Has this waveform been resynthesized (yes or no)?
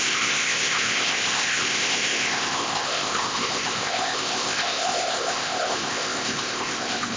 yes